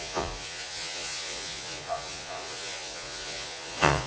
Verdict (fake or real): fake